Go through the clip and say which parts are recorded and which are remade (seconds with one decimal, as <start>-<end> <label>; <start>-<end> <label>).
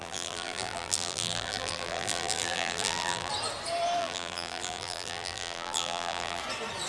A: 0.0-3.3 remade; 3.3-4.0 recorded; 4.0-6.4 remade; 6.4-6.9 recorded